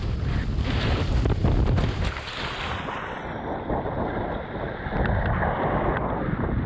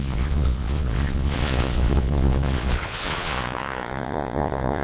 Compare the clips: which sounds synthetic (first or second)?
second